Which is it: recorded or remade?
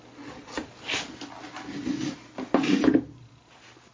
recorded